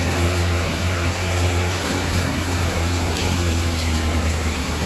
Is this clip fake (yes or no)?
yes